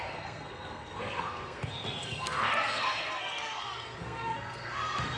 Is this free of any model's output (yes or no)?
no